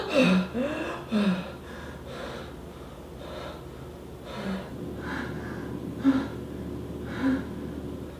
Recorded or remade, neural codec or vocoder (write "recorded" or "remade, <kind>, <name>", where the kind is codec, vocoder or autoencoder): recorded